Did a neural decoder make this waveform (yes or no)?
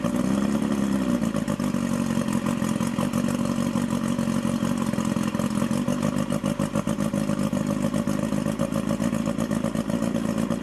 no